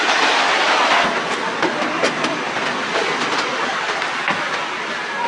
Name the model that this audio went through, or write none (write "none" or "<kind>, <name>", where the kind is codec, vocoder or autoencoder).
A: none